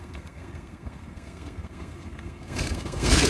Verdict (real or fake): fake